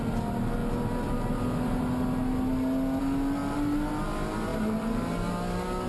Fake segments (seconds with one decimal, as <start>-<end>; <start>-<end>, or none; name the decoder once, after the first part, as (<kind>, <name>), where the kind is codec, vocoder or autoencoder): none